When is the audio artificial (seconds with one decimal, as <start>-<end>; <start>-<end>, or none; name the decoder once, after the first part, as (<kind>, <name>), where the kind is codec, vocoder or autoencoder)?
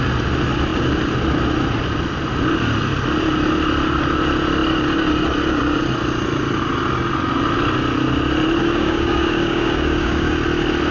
8.6-10.3 (codec, DAC)